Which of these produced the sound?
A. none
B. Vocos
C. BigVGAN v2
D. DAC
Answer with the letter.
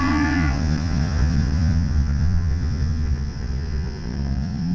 B